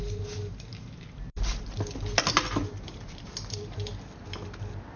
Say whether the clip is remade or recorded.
recorded